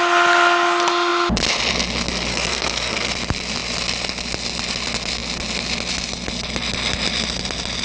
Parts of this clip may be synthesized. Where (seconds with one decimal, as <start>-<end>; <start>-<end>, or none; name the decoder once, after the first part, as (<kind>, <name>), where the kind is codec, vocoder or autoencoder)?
2.3-3.1 (codec, SNAC)